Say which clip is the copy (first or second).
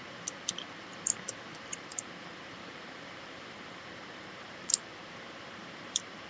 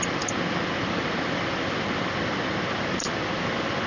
first